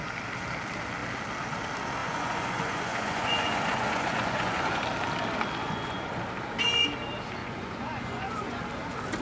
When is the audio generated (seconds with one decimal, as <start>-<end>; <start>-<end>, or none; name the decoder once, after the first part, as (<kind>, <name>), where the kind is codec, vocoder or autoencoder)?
2.0-4.8 (vocoder, Vocos); 5.6-6.1; 7.4-8.6